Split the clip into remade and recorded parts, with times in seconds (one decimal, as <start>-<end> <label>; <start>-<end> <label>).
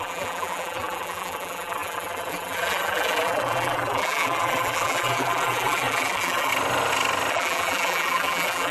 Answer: 0.0-6.5 remade; 6.5-7.3 recorded; 7.3-8.7 remade